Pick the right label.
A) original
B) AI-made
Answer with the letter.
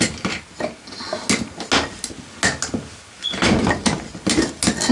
A